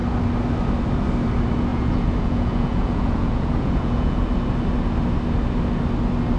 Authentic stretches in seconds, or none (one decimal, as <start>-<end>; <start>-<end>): 0.0-1.7; 4.3-6.4